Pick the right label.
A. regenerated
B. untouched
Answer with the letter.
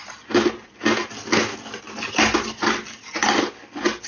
B